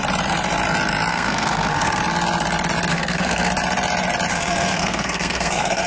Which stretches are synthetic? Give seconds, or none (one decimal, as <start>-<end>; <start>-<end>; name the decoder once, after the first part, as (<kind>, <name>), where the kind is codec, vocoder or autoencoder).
1.1-2.0 (codec, SNAC); 2.9-3.5; 4.3-5.9